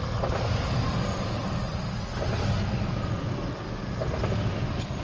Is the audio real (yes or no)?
yes